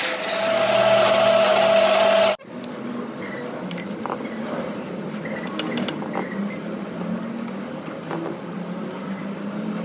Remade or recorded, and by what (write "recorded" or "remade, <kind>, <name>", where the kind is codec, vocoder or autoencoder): recorded